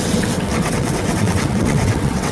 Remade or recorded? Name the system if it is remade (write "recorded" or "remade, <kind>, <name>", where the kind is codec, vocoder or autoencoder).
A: remade, vocoder, WaveNeXt